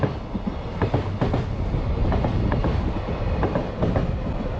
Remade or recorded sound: recorded